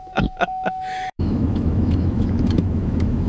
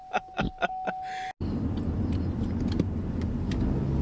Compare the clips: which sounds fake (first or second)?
first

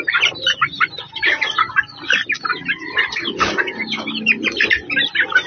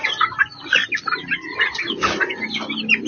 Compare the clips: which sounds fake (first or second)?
first